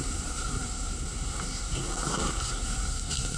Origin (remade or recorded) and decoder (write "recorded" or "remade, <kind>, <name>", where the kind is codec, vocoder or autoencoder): remade, codec, SNAC